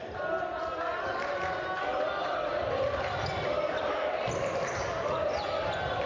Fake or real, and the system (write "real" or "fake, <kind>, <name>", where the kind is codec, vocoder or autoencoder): real